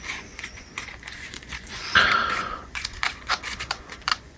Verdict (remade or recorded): remade